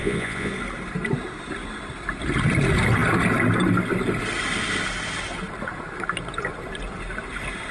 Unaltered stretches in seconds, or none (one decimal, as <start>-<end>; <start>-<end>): 0.5-7.7